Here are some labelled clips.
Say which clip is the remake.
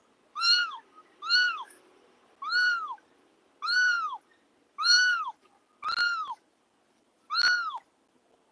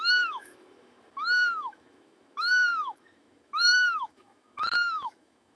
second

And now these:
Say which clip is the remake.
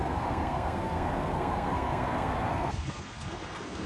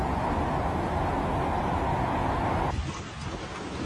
first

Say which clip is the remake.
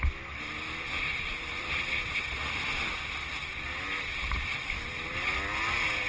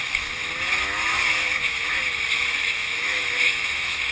second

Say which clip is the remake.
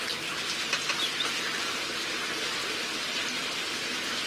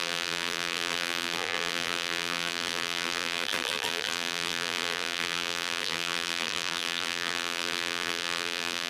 second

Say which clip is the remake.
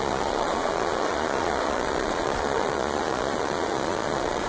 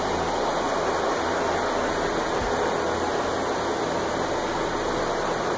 first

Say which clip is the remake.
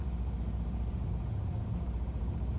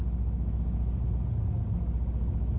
first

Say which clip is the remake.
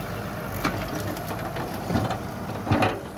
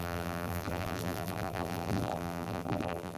second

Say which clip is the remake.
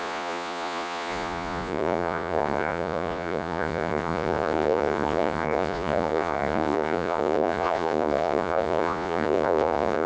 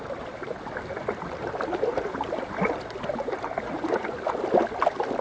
first